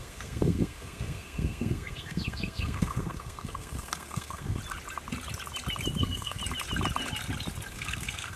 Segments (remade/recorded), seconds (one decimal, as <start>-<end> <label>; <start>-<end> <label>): 0.0-4.6 remade; 4.6-6.0 recorded; 6.0-6.4 remade; 6.4-7.7 recorded; 7.7-8.4 remade